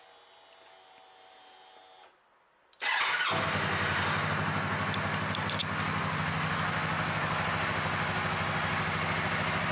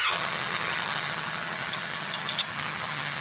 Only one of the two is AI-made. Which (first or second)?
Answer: second